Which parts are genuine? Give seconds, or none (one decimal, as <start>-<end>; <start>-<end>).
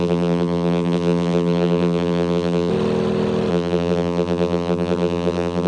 2.7-3.5